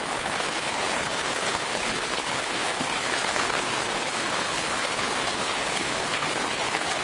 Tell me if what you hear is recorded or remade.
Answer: remade